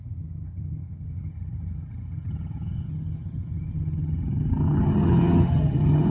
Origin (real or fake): fake